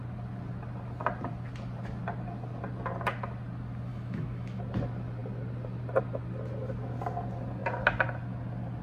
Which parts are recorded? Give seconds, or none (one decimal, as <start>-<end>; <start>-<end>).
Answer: 0.0-3.9; 4.6-8.8